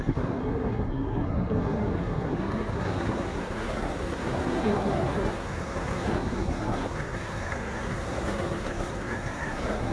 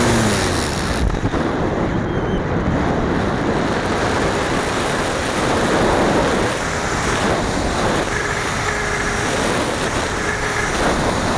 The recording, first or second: second